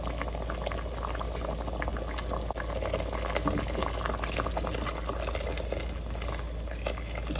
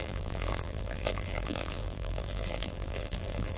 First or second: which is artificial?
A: second